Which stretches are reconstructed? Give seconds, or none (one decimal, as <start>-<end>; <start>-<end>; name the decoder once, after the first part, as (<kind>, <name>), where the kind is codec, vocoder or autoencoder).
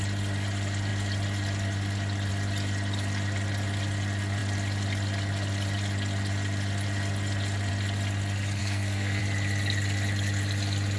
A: 8.6-9.2 (codec, SNAC)